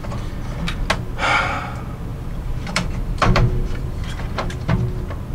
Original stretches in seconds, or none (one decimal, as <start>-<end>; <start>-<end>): 0.0-2.1; 4.7-5.3